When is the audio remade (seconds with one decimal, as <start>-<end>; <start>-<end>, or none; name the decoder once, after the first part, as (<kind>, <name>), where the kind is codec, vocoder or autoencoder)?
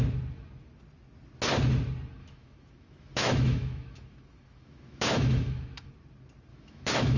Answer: 2.2-5.9 (autoencoder, DAC-VAE); 6.5-7.2